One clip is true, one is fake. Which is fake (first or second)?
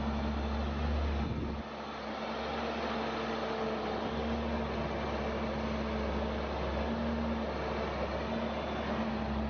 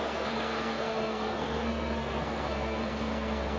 second